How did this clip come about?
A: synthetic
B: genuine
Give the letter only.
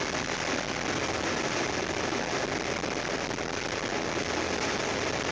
B